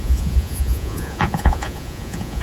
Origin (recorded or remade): remade